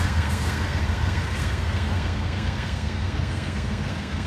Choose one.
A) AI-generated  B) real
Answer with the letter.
A